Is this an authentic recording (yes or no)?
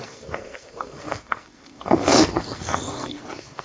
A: no